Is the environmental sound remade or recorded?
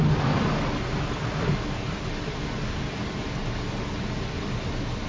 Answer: recorded